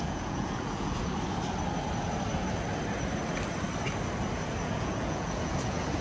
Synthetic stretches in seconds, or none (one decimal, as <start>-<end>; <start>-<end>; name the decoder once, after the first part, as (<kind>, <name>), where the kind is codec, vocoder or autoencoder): 0.0-1.1 (vocoder, Vocos); 4.7-6.0